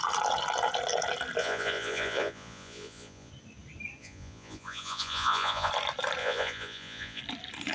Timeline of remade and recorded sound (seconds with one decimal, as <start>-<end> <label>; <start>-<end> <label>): 0.0-1.4 recorded; 1.4-3.3 remade; 3.3-4.0 recorded; 4.0-5.7 remade; 5.7-6.2 recorded; 6.2-7.2 remade; 7.2-7.7 recorded